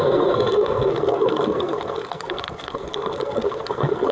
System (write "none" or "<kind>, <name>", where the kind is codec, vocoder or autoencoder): codec, SNAC